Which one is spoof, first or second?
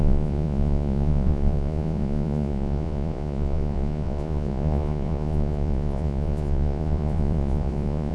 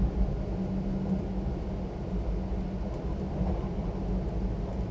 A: first